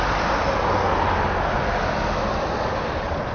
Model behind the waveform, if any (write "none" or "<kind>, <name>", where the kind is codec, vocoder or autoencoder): none